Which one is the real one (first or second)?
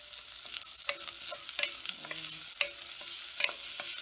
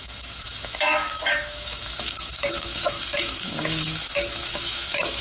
first